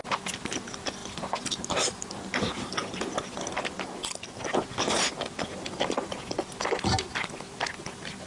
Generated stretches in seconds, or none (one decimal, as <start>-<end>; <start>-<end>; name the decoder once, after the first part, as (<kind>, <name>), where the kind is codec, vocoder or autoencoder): none

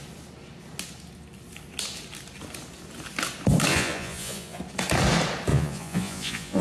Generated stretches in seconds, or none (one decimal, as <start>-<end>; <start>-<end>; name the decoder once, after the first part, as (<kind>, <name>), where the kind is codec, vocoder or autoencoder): 3.7-4.6 (vocoder, Vocos); 5.5-6.6

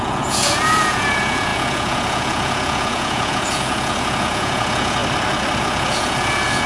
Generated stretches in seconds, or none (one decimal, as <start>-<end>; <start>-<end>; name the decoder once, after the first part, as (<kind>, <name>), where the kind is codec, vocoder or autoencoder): 0.0-5.0 (vocoder, Vocos); 5.6-6.7

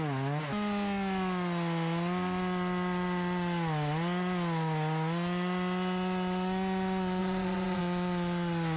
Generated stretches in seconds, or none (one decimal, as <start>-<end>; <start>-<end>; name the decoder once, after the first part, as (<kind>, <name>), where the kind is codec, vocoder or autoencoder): 7.2-7.8 (vocoder, Vocos)

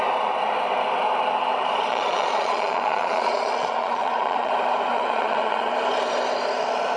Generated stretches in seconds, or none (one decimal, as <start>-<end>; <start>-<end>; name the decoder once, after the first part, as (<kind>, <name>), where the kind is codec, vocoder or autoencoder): 1.9-4.5 (vocoder, Vocos); 4.9-5.7

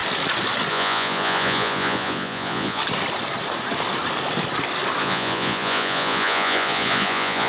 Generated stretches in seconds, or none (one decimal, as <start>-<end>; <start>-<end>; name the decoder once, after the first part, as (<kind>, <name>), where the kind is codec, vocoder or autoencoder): 0.7-2.8 (vocoder, Vocos); 5.0-7.5

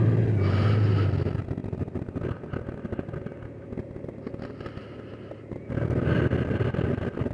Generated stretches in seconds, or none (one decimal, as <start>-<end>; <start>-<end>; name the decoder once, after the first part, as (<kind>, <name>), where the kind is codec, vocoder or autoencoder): none